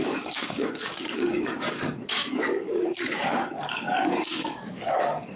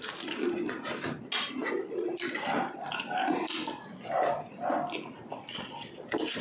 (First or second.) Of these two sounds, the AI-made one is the first